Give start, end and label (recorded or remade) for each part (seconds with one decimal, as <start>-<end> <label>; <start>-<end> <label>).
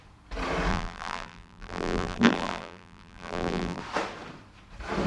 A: 0.0-0.7 recorded; 0.7-3.8 remade; 3.8-5.1 recorded